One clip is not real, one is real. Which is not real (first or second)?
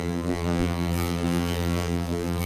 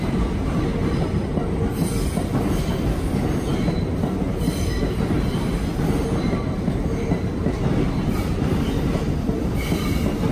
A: first